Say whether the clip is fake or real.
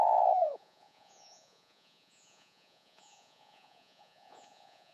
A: fake